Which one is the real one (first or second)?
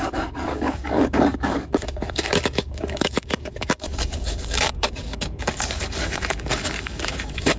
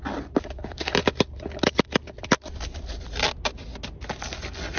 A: second